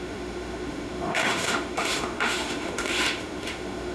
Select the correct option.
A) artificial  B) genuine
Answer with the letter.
A